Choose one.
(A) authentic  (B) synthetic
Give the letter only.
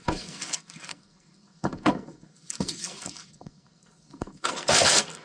B